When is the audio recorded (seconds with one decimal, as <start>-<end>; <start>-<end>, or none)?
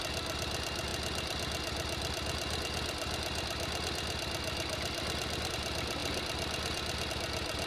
0.0-7.7